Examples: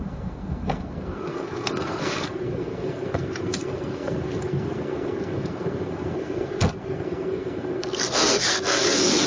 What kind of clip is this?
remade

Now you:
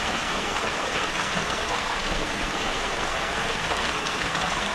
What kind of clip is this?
remade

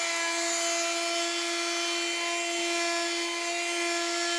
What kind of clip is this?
recorded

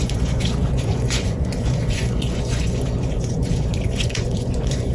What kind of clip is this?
remade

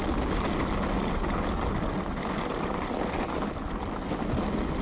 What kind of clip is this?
recorded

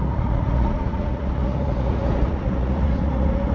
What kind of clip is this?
remade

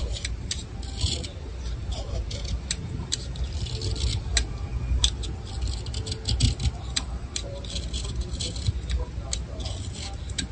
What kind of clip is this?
recorded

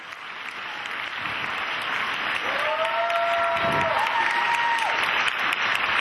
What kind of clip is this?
recorded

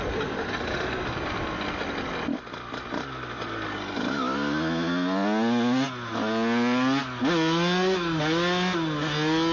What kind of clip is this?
recorded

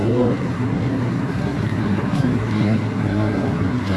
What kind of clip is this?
remade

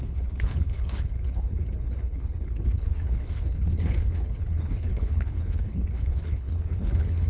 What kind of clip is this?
remade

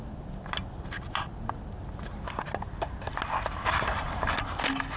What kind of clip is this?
recorded